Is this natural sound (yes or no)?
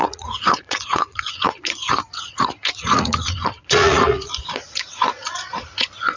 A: no